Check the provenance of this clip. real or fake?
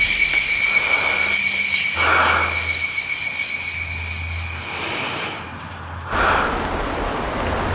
real